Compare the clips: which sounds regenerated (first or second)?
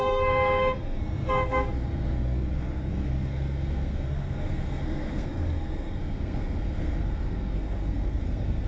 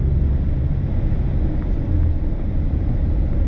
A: first